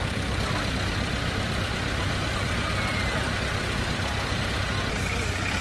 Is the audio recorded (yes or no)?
yes